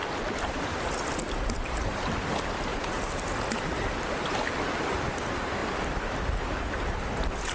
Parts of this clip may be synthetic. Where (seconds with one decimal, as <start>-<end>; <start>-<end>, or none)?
0.0-0.6; 2.7-5.1